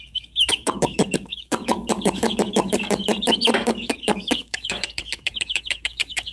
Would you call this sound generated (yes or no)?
yes